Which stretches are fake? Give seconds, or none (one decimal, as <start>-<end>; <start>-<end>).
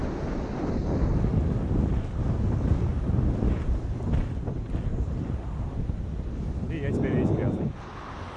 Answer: none